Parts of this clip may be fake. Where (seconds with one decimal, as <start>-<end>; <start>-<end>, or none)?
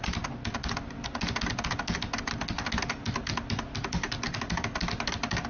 none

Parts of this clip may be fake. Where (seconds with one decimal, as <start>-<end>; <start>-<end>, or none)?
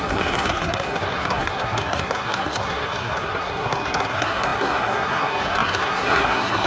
0.0-6.7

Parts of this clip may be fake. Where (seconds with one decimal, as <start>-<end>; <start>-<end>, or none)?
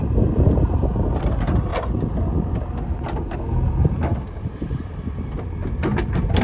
4.1-4.9; 5.6-6.4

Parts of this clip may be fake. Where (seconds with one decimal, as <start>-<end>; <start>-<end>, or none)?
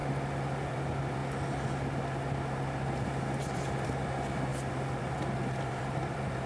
0.7-1.2; 3.4-6.5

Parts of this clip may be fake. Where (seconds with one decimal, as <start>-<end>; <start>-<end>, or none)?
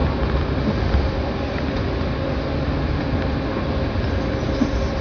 none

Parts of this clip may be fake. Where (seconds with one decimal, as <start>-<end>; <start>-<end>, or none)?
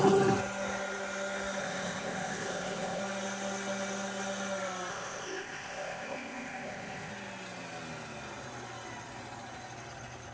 1.6-3.0; 4.9-7.1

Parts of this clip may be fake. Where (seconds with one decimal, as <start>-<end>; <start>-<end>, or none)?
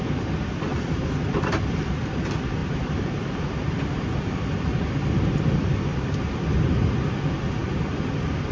0.7-2.1; 2.6-3.9